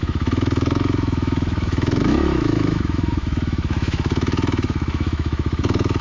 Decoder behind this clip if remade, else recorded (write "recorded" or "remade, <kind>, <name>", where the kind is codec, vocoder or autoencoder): remade, autoencoder, DAC-VAE